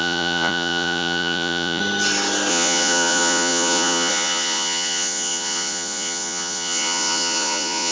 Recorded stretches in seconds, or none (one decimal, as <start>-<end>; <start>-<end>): 1.8-2.5